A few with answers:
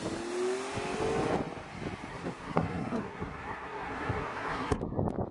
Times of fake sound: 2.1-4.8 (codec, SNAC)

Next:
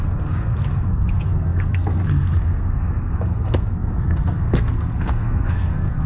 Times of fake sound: 0.0-6.1 (codec, SNAC)